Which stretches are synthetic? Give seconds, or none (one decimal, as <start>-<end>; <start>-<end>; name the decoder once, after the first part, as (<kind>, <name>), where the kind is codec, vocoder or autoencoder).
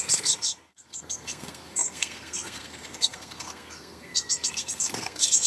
0.0-5.5 (codec, SNAC)